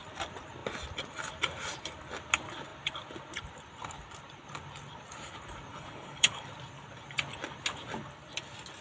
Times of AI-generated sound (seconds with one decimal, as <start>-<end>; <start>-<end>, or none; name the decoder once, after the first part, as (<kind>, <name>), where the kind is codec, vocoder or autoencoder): 5.7-6.5 (codec, HILCodec)

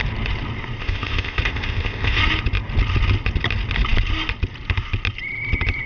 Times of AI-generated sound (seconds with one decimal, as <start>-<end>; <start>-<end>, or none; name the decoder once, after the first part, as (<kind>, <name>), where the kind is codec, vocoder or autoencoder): 0.8-2.2 (codec, ZipCodec)

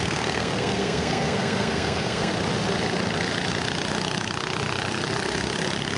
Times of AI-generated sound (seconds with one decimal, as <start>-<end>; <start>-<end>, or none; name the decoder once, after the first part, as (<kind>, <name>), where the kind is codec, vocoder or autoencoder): 0.0-2.3 (codec, SNAC)

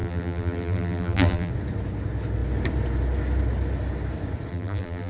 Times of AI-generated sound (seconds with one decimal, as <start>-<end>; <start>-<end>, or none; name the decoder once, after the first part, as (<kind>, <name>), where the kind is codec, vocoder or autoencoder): 0.0-1.5 (vocoder, BigVGAN v2); 4.5-5.1

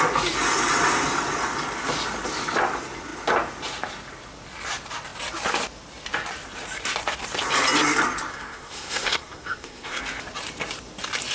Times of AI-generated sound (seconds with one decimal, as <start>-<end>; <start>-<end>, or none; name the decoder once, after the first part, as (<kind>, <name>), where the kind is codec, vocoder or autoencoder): 8.3-10.0 (codec, SNAC)

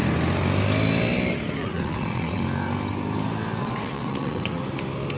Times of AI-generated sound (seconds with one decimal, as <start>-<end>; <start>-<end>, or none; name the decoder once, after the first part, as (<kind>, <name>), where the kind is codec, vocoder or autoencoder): 1.6-2.4 (vocoder, WaveNeXt); 3.6-4.6

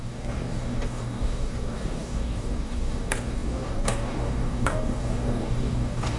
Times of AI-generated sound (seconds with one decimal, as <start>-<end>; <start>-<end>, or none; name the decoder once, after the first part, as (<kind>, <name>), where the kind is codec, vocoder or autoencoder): 0.0-6.2 (codec, DAC)

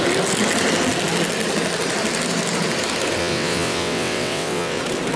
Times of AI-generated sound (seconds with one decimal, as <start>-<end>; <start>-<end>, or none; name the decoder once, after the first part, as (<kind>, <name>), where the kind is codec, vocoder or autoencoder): 3.2-4.8 (vocoder, WaveNeXt)